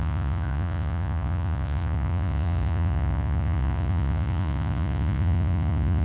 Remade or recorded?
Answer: remade